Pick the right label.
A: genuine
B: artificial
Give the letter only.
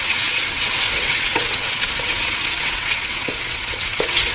B